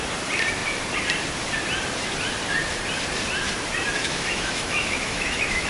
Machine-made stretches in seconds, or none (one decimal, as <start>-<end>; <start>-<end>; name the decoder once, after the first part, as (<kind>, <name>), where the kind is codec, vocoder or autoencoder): 4.0-5.7 (autoencoder, DAC-VAE)